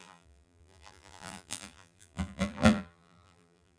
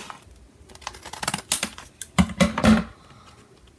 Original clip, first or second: second